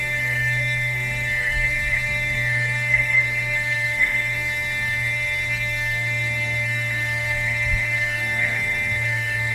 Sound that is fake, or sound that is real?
fake